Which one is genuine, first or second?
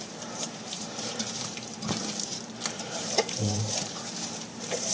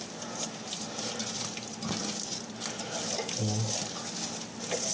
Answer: second